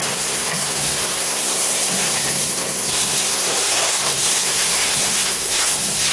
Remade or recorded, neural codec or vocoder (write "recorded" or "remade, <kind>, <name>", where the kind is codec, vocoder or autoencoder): remade, codec, SNAC